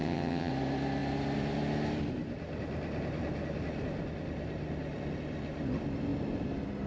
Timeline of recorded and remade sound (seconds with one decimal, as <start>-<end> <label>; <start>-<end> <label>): 0.0-0.5 remade; 0.5-6.9 recorded